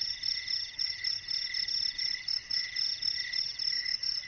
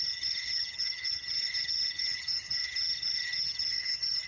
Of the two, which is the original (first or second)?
first